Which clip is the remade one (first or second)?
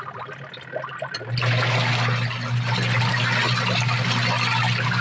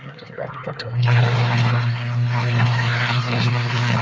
second